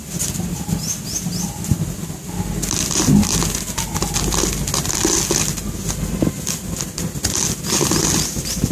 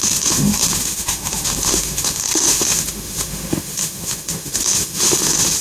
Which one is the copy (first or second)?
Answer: second